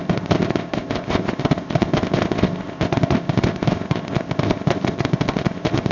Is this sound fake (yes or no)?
yes